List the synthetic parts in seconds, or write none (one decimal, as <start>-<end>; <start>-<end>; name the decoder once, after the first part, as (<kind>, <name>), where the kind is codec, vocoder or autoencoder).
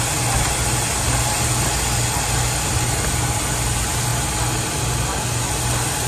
none